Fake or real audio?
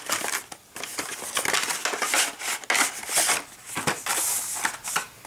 real